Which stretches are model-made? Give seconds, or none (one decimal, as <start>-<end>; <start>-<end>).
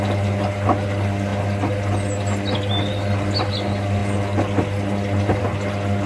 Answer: none